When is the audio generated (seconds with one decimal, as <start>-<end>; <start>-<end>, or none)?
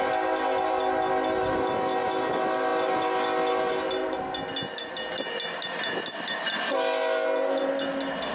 none